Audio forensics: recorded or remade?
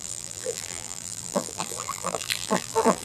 remade